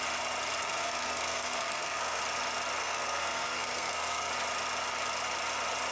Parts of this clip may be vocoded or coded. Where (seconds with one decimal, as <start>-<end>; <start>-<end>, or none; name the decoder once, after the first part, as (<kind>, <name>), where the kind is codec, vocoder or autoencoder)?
0.6-2.2 (codec, SNAC); 2.8-4.3